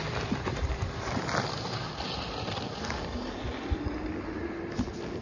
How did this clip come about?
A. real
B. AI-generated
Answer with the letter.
A